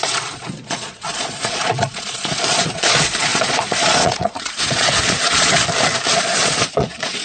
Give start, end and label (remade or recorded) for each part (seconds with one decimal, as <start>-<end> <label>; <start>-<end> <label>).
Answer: 0.0-5.5 remade; 5.5-6.1 recorded; 6.1-7.2 remade